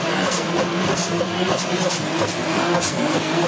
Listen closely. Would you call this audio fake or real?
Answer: fake